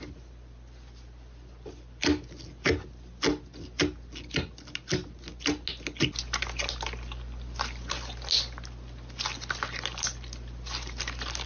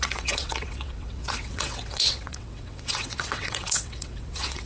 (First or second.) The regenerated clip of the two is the second